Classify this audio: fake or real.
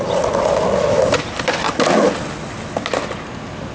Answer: real